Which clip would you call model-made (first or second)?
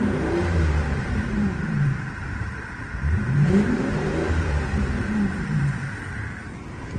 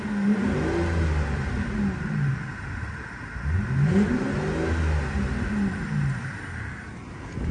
first